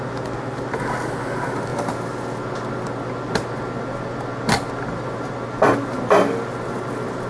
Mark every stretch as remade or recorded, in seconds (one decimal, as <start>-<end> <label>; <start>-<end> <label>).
0.0-7.3 recorded